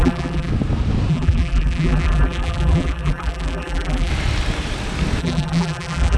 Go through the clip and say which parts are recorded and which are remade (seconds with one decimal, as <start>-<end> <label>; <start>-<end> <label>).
0.0-0.5 remade; 0.5-1.1 recorded; 1.1-4.1 remade; 4.1-5.2 recorded; 5.2-6.2 remade